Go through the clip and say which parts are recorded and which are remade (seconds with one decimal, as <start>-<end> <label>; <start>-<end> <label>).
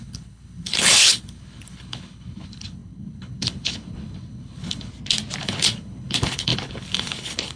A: 0.0-4.9 remade; 4.9-5.4 recorded; 5.4-7.6 remade